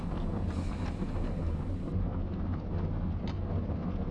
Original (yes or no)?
yes